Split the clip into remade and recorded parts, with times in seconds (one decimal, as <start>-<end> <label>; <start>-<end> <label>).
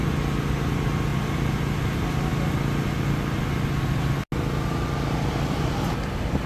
0.0-6.5 recorded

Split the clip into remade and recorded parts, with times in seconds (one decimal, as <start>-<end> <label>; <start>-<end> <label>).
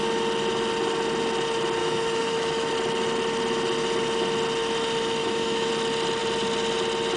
0.0-1.8 recorded; 1.8-2.7 remade; 2.7-5.2 recorded; 5.2-5.7 remade; 5.7-7.2 recorded